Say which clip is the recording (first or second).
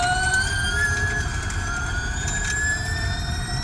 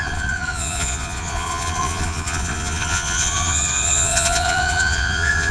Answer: first